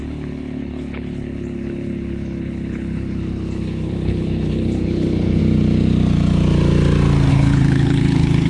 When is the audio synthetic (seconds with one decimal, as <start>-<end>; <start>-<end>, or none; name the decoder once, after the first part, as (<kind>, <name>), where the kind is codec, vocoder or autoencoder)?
0.0-5.4 (codec, HILCodec); 7.3-8.5